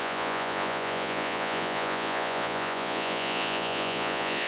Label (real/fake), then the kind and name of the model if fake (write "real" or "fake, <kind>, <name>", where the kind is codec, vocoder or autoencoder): fake, vocoder, Vocos